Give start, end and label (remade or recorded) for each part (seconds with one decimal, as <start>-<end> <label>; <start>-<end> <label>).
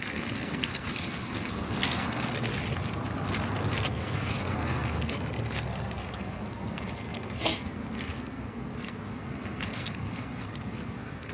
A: 0.0-2.5 remade; 2.5-3.6 recorded; 3.6-11.3 remade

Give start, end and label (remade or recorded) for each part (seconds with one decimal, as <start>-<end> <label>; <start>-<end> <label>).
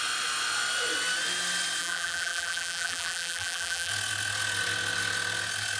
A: 0.0-1.8 recorded; 1.8-3.9 remade; 3.9-5.8 recorded